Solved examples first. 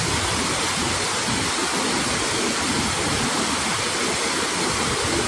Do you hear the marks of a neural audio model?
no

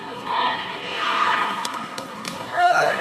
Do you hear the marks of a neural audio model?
yes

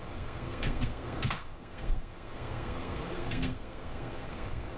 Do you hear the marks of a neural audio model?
yes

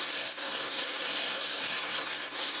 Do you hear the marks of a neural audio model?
yes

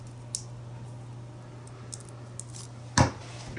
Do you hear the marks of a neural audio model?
no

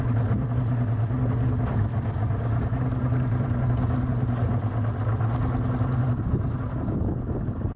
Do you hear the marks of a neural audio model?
no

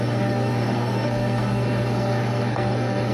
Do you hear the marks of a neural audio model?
yes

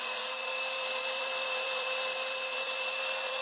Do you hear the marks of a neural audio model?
yes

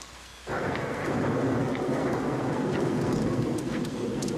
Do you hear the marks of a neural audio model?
yes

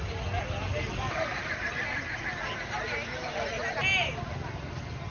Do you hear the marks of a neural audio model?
no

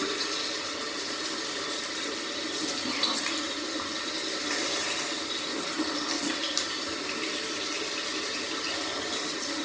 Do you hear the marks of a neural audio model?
no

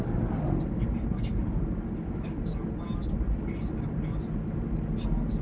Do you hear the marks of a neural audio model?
no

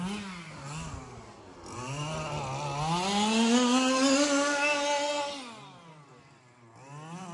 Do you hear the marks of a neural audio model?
no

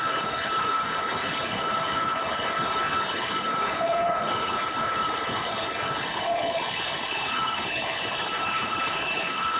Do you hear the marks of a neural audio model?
yes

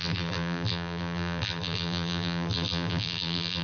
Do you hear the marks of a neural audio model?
yes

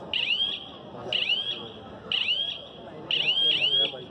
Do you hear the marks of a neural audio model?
no